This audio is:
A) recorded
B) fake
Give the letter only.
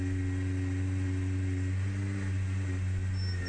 A